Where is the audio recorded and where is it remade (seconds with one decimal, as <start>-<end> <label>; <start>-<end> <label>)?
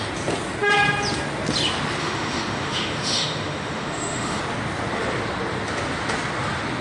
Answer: 0.0-2.0 recorded; 2.0-4.4 remade; 4.4-6.8 recorded